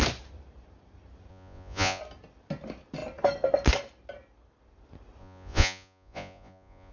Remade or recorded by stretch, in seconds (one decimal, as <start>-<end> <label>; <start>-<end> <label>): 0.0-1.3 recorded; 1.3-2.0 remade; 2.0-5.2 recorded; 5.2-6.9 remade